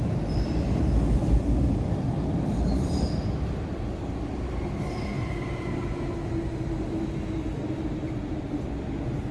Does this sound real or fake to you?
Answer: real